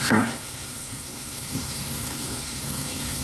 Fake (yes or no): yes